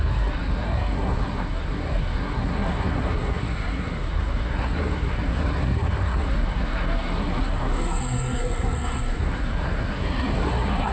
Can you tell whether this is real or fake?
fake